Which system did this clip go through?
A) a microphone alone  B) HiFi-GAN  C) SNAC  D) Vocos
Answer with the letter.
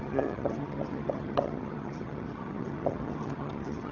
B